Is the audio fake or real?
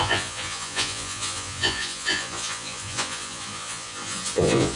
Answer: fake